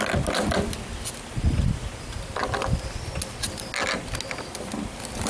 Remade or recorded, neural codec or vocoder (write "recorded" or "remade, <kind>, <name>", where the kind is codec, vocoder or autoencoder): recorded